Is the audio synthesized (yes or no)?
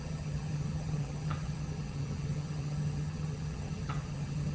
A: yes